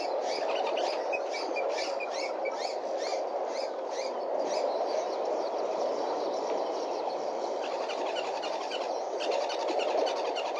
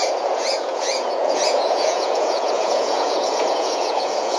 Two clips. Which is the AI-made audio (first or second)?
second